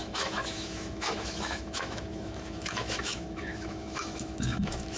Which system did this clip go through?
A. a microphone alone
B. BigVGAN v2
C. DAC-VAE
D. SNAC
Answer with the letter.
C